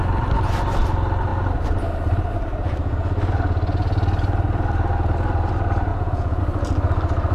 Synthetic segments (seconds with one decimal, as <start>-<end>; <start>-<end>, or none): 5.9-6.4